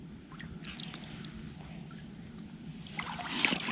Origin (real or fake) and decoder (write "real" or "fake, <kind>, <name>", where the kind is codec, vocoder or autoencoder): real